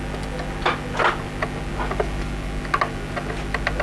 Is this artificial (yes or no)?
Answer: no